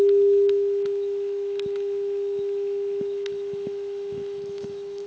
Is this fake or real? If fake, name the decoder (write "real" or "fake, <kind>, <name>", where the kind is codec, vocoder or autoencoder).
fake, autoencoder, DAC-VAE